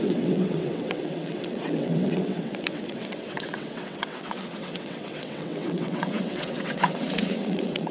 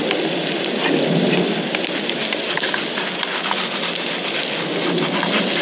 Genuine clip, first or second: second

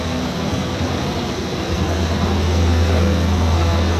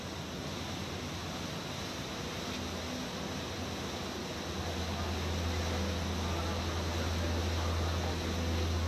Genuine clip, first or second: second